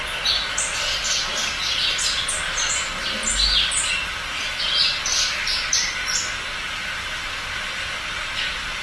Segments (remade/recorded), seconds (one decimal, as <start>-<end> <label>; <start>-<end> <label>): 0.0-8.8 recorded

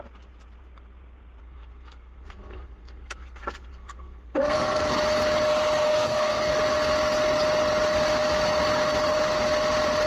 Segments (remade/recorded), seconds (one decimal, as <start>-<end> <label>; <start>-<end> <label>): 0.0-1.4 recorded; 1.4-4.8 remade; 4.8-5.9 recorded; 5.9-6.5 remade; 6.5-10.1 recorded

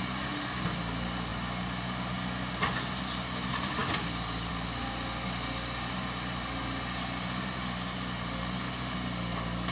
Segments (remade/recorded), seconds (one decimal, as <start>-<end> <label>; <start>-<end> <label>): 0.0-9.7 recorded

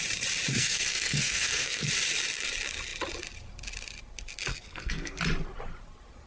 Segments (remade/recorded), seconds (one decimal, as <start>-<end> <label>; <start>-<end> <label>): 0.0-0.5 recorded; 0.5-1.9 remade; 1.9-4.5 recorded; 4.5-5.2 remade; 5.2-6.3 recorded